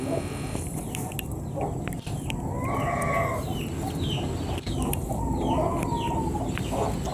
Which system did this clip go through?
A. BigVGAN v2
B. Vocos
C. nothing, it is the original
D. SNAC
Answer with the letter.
C